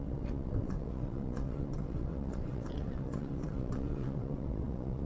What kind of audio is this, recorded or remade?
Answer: remade